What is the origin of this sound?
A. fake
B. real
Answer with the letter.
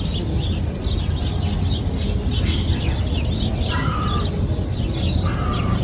B